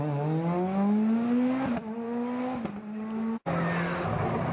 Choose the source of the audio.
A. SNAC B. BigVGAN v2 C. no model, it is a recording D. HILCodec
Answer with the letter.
C